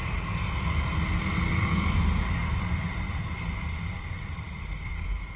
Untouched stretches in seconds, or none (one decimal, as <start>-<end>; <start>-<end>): 0.0-5.4